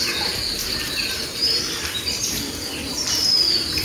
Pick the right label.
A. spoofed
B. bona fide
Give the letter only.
A